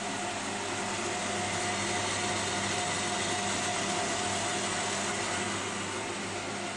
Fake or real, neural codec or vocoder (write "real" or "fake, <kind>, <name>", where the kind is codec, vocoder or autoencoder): real